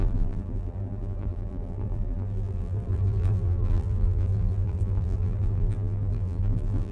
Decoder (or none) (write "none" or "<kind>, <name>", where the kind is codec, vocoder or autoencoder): vocoder, BigVGAN v2